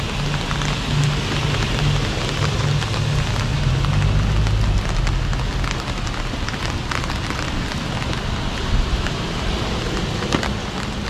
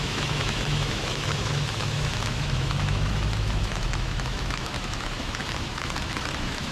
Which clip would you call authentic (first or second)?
first